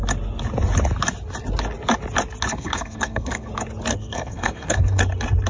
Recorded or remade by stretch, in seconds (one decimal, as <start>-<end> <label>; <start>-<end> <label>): 0.0-2.5 recorded; 2.5-3.5 remade; 3.5-3.9 recorded; 3.9-5.0 remade; 5.0-5.5 recorded